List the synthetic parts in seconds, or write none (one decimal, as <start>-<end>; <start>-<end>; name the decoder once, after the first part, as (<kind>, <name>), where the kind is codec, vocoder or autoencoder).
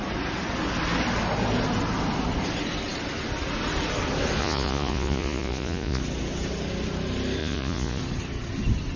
4.4-6.0 (vocoder, Vocos); 7.4-8.0